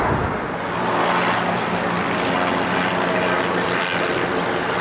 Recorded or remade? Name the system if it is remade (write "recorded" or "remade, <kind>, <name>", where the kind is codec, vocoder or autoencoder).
recorded